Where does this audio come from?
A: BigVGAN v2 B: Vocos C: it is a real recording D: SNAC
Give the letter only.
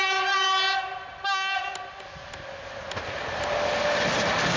C